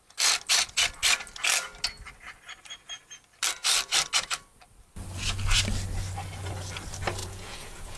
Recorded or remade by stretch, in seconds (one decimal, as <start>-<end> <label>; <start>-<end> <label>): 0.0-7.2 recorded; 7.2-8.0 remade